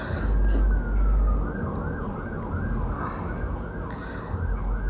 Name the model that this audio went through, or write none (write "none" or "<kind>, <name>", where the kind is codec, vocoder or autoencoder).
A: none